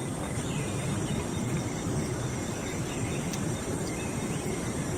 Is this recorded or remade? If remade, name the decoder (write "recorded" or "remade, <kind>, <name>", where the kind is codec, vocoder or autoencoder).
recorded